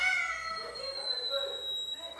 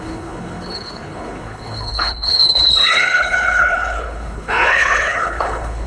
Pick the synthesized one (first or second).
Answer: second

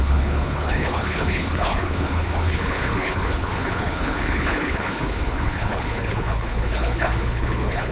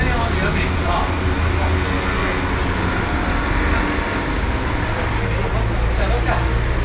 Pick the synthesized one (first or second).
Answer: first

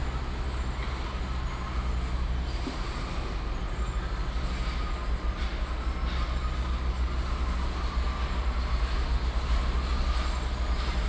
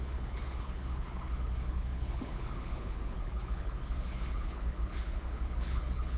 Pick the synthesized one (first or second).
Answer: second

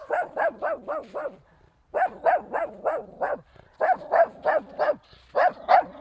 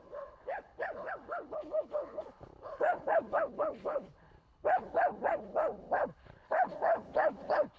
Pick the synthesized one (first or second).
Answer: second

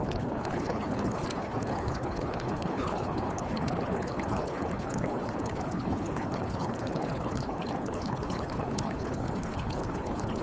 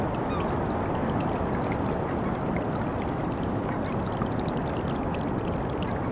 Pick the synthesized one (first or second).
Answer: first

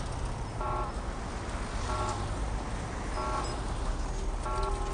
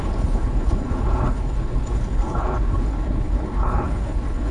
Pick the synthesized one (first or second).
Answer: second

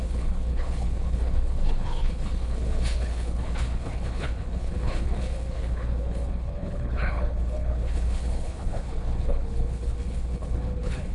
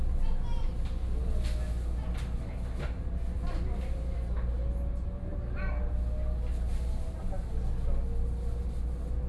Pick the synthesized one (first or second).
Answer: first